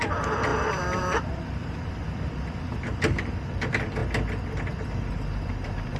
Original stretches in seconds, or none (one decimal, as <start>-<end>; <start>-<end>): 0.0-6.0